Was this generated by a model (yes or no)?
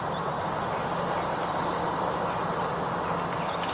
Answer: no